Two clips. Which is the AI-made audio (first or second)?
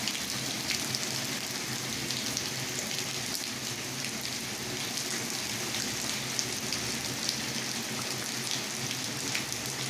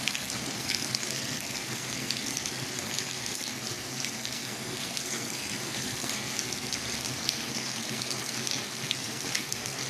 second